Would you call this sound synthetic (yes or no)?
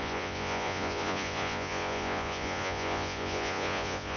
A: yes